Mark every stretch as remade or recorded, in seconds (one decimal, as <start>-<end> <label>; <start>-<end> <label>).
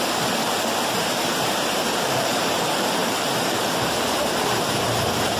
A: 0.0-5.4 remade